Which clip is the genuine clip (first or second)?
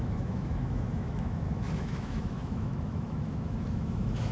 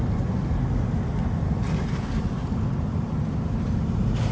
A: second